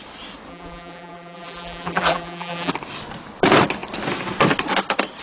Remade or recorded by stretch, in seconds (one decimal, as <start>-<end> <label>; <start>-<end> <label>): 0.0-0.5 recorded; 0.5-2.7 remade; 2.7-5.2 recorded

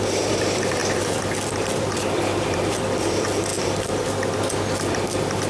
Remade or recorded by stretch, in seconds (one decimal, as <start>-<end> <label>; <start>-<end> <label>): 0.0-3.5 remade; 3.5-5.5 recorded

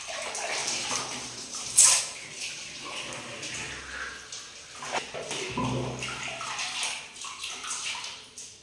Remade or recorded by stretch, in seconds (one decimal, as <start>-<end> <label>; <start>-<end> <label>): 0.0-0.6 recorded; 0.6-2.0 remade; 2.0-8.6 recorded

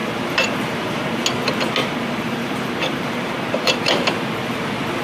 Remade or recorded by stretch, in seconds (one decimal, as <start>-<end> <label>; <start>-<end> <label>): 0.0-1.2 remade; 1.2-1.8 recorded; 1.8-3.8 remade; 3.8-5.0 recorded

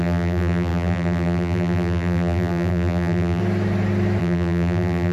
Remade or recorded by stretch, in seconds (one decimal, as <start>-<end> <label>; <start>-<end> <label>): 0.0-3.4 remade; 3.4-4.2 recorded; 4.2-5.1 remade